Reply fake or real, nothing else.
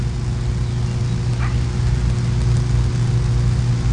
real